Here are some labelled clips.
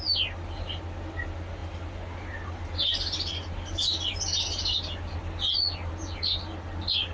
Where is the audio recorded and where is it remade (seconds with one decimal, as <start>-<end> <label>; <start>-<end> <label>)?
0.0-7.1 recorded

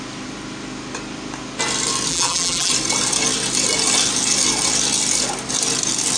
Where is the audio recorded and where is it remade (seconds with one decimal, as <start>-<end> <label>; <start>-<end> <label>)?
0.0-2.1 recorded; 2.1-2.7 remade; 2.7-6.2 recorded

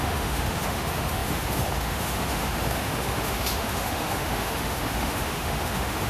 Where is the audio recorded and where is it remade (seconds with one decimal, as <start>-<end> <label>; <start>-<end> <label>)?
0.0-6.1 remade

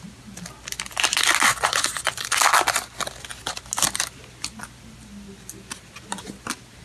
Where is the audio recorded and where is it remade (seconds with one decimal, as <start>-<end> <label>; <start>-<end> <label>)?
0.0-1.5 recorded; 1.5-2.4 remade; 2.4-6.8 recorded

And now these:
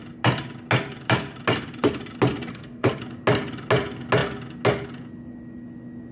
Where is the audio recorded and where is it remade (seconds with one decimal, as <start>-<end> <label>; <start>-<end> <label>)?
0.0-2.5 recorded; 2.5-3.0 remade; 3.0-6.1 recorded